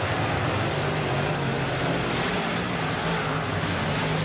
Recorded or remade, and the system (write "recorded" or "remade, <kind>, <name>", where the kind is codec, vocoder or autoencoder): recorded